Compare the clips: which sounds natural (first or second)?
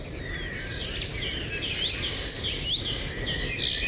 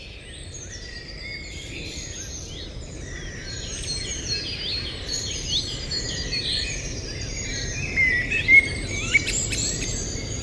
first